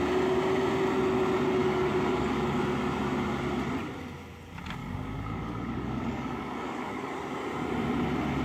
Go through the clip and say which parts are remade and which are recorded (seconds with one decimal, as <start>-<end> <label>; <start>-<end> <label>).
0.0-1.6 recorded; 1.6-2.6 remade; 2.6-4.8 recorded; 4.8-7.1 remade; 7.1-8.4 recorded